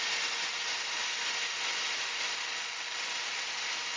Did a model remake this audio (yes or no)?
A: no